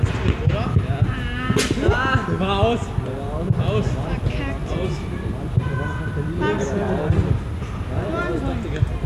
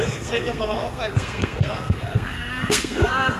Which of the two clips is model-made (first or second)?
second